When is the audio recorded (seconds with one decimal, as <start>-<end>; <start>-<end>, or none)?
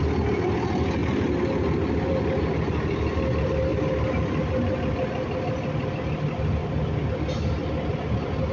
0.0-8.5